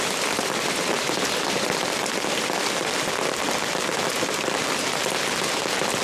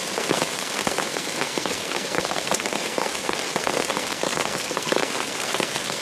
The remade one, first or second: second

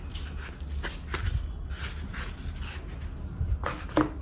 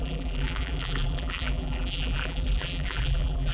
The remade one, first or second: second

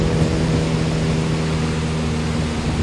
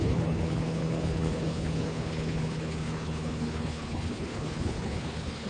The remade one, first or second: second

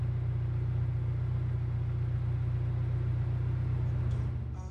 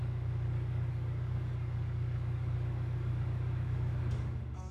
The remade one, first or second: second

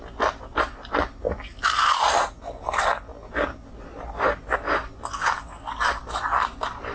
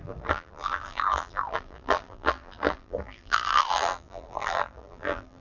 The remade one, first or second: second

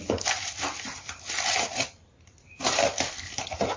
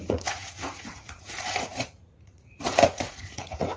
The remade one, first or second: second